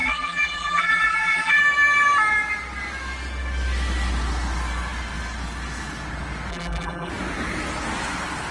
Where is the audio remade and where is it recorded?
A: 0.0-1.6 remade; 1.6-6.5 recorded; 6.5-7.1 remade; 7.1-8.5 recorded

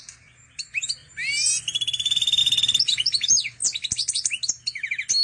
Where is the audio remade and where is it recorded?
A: 0.0-5.2 recorded

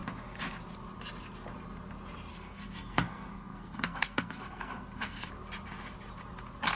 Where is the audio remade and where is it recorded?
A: 0.0-2.3 recorded; 2.3-5.3 remade; 5.3-6.8 recorded

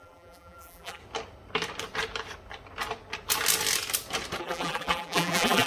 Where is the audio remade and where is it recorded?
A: 0.0-1.0 remade; 1.0-4.4 recorded; 4.4-5.7 remade